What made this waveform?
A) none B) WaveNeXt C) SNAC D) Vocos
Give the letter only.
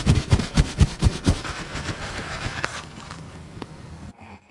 C